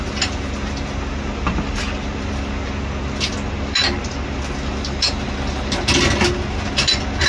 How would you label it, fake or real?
real